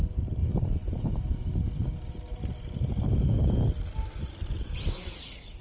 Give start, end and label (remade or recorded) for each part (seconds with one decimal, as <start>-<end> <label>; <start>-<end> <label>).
0.0-5.6 recorded